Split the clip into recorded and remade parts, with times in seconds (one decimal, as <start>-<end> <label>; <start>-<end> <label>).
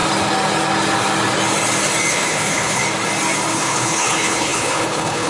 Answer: 0.0-2.1 recorded; 2.1-2.8 remade; 2.8-3.5 recorded; 3.5-5.3 remade